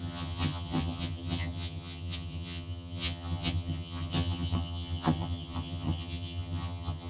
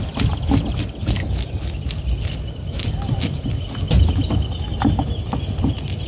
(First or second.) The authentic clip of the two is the second